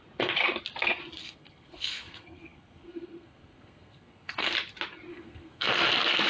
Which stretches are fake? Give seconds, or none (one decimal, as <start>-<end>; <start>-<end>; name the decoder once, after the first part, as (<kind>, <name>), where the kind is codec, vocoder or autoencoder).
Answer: 1.2-4.5 (codec, SNAC); 5.1-5.7